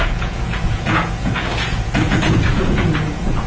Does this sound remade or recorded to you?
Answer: remade